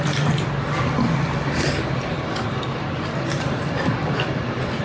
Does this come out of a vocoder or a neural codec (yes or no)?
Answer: yes